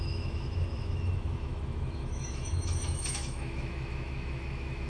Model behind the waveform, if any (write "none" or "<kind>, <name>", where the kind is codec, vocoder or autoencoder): autoencoder, DAC-VAE